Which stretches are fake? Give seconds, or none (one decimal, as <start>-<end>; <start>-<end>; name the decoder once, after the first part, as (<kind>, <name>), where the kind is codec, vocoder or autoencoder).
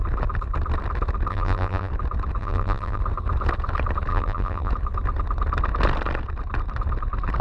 1.3-1.9 (vocoder, BigVGAN v2); 2.4-3.0; 4.1-4.7